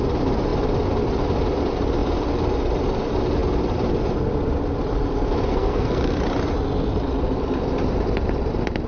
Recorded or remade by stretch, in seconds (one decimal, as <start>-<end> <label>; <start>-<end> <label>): 0.0-5.5 recorded; 5.5-6.2 remade; 6.2-8.9 recorded